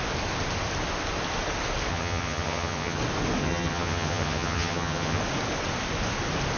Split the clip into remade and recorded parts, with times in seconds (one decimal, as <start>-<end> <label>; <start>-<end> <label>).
0.0-1.9 recorded; 1.9-3.0 remade; 3.0-3.4 recorded; 3.4-5.2 remade; 5.2-6.6 recorded